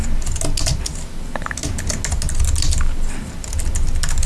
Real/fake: real